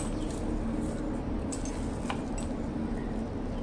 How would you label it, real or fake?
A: real